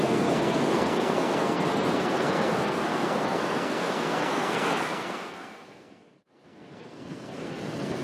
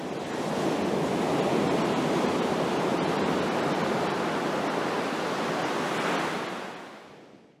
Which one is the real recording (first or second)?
second